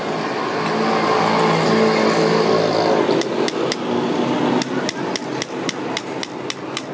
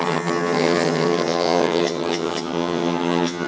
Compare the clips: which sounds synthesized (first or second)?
second